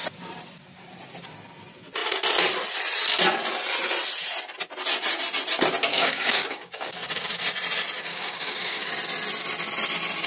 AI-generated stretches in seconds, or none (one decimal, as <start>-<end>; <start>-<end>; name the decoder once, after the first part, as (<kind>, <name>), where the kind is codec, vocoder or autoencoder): 5.9-7.4 (codec, DAC); 8.1-8.9